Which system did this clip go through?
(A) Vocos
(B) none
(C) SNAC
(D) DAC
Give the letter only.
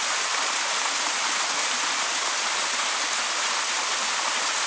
B